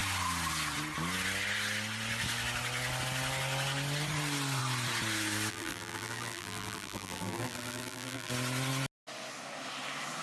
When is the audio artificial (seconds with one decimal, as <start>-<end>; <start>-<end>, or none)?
5.5-8.3